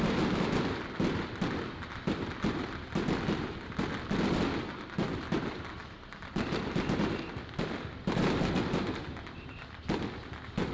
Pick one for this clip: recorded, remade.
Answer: recorded